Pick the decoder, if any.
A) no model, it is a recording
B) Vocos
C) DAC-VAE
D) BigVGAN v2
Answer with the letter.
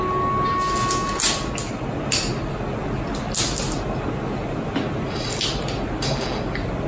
A